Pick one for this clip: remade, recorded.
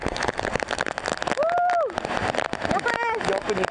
recorded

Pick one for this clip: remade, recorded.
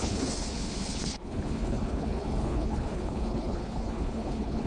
remade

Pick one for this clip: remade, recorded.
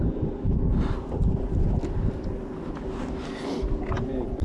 recorded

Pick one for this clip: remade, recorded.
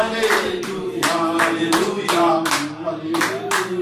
remade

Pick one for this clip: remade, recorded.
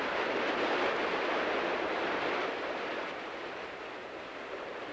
recorded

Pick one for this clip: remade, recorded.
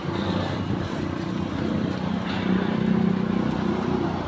recorded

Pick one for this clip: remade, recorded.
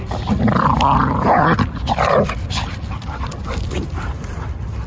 recorded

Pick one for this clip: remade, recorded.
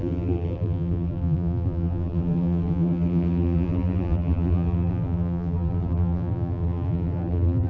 remade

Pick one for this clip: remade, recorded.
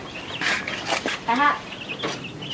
recorded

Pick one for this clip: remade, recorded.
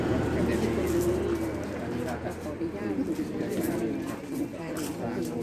recorded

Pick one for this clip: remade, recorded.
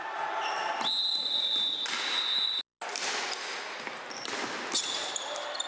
recorded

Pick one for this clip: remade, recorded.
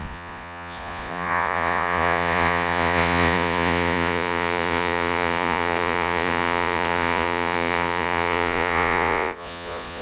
remade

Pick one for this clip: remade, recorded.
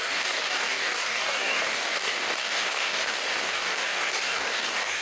remade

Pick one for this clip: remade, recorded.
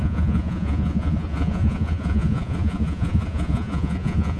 remade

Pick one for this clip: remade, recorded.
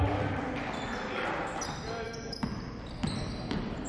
recorded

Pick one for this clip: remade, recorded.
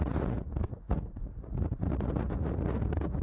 remade